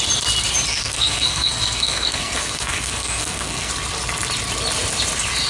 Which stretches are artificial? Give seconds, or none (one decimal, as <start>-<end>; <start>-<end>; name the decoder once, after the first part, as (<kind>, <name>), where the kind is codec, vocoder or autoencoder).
0.7-3.7 (codec, SNAC)